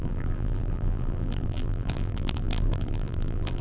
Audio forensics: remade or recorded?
remade